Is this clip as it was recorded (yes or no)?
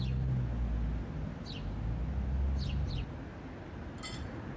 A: yes